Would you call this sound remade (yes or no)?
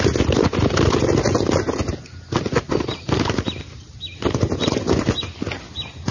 no